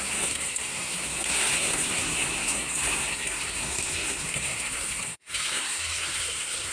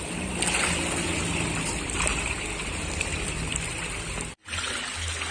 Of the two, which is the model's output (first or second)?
first